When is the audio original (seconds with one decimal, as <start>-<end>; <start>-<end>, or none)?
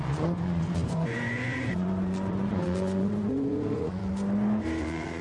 4.0-4.8